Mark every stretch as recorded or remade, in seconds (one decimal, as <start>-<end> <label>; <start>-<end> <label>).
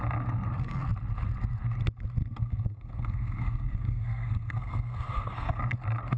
0.0-2.2 recorded; 2.2-5.6 remade; 5.6-6.2 recorded